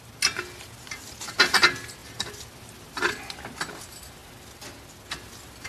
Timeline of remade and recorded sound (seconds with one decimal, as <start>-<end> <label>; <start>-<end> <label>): 0.0-2.0 recorded; 2.0-3.1 remade; 3.1-5.7 recorded